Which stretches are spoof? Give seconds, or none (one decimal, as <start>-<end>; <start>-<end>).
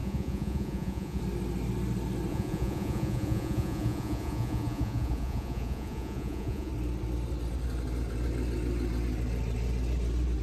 0.0-1.2; 2.3-6.7